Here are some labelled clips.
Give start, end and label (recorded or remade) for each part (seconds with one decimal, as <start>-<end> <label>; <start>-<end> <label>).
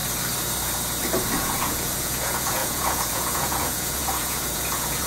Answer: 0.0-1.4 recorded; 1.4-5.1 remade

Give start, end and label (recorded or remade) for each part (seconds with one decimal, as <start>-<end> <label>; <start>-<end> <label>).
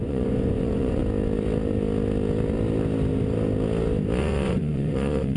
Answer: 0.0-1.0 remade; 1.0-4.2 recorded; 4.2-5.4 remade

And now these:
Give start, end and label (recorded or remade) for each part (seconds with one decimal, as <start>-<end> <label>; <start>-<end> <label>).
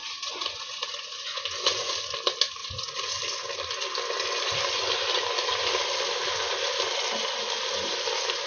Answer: 0.0-1.9 remade; 1.9-2.6 recorded; 2.6-3.1 remade; 3.1-8.5 recorded